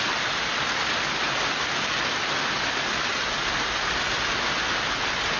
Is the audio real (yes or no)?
yes